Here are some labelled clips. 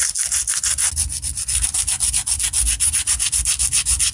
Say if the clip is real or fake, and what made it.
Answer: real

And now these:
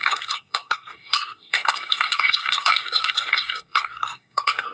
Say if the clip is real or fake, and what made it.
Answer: fake, codec, SNAC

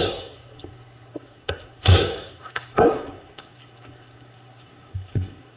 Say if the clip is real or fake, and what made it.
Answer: fake, codec, SNAC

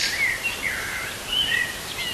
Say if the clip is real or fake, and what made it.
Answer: real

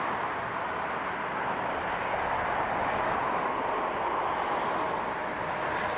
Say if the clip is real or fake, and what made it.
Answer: real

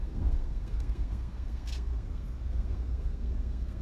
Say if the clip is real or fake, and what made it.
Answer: fake, codec, SNAC